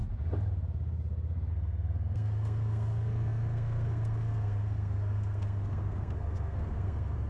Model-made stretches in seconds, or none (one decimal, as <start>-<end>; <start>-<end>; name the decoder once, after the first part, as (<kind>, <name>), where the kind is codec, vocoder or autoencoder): 1.5-7.3 (codec, SNAC)